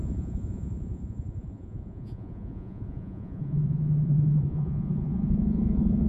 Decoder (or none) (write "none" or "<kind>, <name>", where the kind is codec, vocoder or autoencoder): vocoder, Vocos